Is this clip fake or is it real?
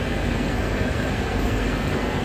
fake